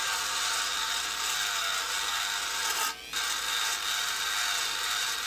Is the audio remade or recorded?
recorded